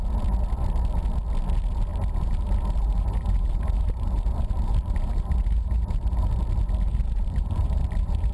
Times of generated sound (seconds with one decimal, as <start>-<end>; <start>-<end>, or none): 1.9-6.3; 6.9-8.3